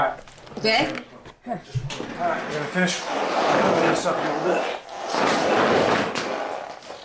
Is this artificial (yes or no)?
no